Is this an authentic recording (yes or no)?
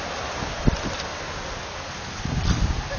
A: yes